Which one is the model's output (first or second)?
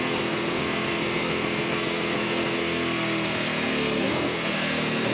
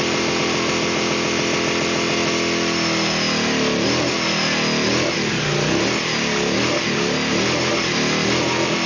first